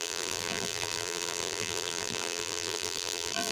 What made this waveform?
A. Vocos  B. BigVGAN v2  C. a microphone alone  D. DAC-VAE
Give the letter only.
B